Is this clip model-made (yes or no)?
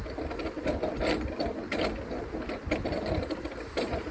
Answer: no